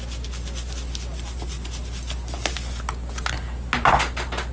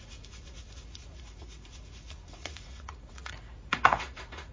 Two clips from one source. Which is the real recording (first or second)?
first